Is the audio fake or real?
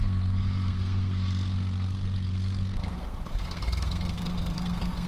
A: fake